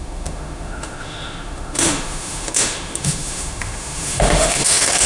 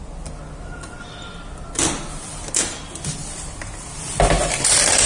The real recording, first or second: second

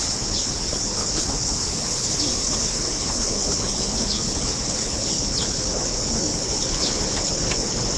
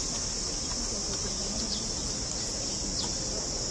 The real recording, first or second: second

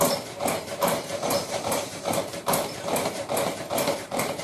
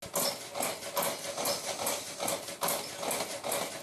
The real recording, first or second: second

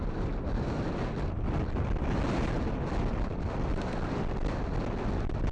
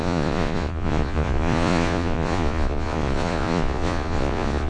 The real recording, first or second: first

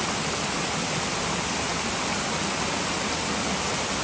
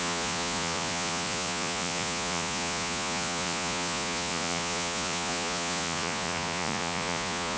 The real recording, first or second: first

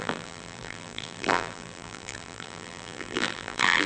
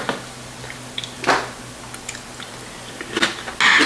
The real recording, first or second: second